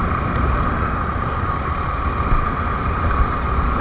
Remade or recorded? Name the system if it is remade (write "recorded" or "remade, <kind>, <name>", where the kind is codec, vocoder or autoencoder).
recorded